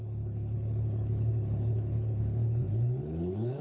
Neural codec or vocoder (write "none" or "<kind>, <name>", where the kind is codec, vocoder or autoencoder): codec, HILCodec